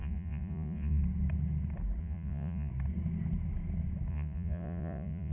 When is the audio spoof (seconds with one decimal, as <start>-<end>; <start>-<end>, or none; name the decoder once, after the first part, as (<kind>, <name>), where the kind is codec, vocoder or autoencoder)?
0.0-1.0 (vocoder, Vocos); 2.0-2.7; 4.1-5.3